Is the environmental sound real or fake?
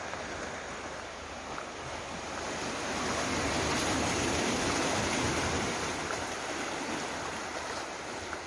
real